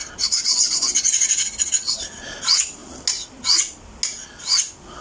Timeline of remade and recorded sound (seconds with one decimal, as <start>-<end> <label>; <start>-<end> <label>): 0.0-5.0 recorded